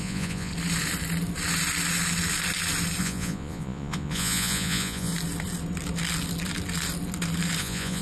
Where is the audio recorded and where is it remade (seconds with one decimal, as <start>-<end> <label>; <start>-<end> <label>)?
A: 0.0-0.5 remade; 0.5-3.0 recorded; 3.0-5.1 remade; 5.1-7.6 recorded; 7.6-8.0 remade